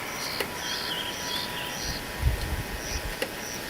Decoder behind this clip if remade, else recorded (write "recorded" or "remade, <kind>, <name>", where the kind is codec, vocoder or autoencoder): recorded